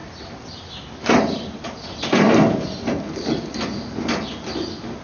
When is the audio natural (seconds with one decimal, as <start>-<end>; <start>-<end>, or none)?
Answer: 0.0-5.0